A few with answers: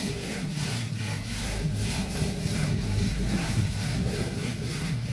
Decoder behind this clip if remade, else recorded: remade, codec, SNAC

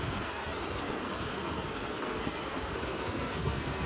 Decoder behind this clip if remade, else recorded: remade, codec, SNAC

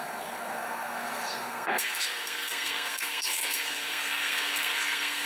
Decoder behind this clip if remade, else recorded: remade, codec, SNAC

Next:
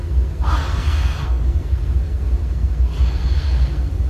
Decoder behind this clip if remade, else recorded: remade, codec, SNAC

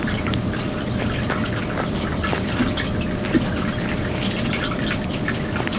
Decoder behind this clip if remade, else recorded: recorded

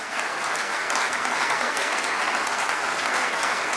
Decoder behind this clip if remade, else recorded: remade, codec, SNAC